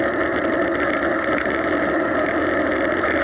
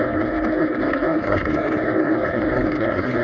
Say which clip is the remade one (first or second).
second